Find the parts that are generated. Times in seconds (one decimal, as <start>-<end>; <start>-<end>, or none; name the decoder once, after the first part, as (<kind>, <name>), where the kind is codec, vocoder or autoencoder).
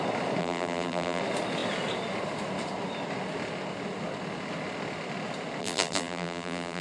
0.4-1.2 (vocoder, BigVGAN v2); 5.6-6.8